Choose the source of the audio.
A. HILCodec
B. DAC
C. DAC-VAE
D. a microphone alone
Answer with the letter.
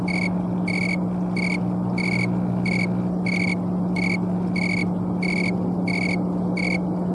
D